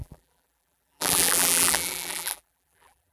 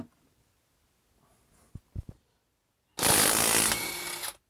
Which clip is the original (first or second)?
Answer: second